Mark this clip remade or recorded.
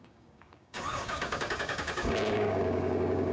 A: remade